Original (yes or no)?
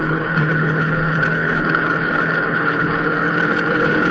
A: no